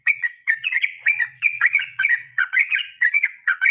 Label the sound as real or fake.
fake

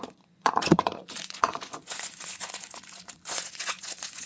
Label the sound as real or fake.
fake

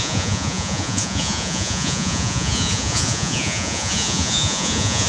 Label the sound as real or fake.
fake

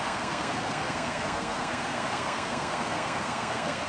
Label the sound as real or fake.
fake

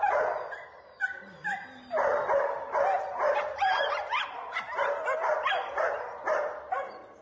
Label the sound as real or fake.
real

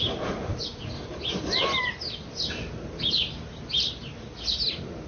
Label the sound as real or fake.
real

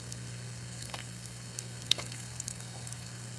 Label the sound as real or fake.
fake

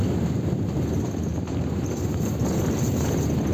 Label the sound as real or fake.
real